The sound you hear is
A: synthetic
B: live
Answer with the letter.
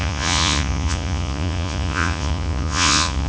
A